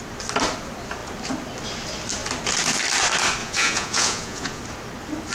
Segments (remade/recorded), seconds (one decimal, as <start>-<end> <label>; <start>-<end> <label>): 0.0-3.4 recorded; 3.4-4.6 remade; 4.6-5.3 recorded